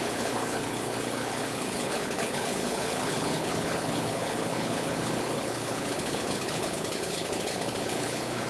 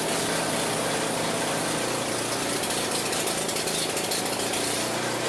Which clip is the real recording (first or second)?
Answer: second